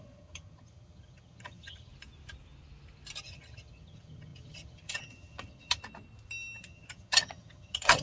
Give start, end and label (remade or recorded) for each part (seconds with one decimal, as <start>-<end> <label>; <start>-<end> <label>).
0.0-1.9 remade; 1.9-3.2 recorded; 3.2-5.8 remade; 5.8-6.6 recorded; 6.6-8.0 remade